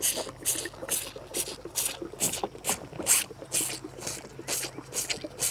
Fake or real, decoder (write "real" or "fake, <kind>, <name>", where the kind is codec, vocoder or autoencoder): real